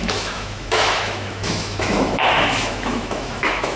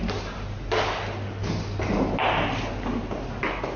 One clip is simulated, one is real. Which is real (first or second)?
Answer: second